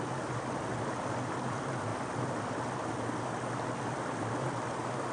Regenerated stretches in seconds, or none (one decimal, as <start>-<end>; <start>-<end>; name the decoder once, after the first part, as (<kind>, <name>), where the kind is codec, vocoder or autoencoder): none